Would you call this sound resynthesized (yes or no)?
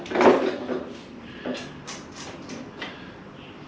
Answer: yes